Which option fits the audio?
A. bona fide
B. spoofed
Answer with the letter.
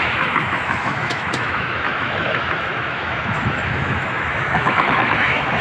B